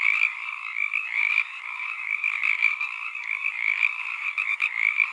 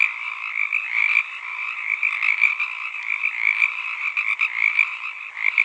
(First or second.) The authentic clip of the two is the second